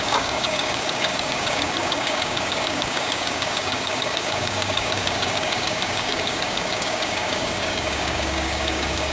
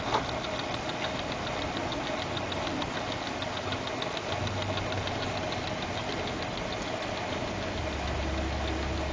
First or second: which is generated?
first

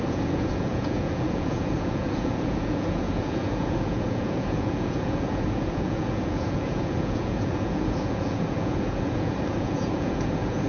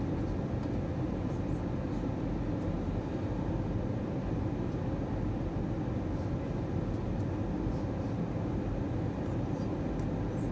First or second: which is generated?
first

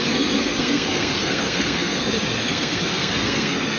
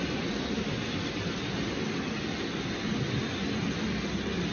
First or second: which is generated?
first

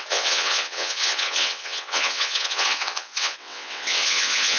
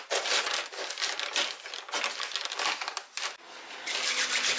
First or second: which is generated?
first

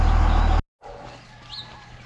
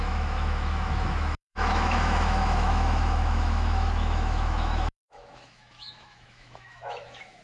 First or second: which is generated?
second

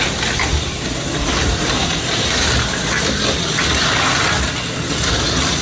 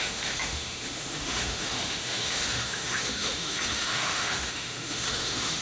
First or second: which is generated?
second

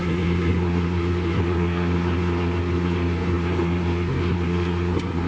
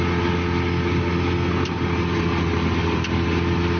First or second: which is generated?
first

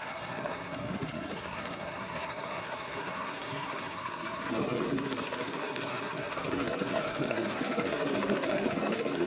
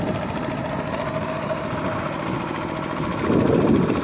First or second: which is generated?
first